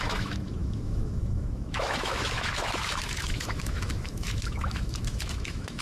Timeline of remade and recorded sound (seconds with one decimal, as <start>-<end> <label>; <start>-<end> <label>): 0.0-5.8 remade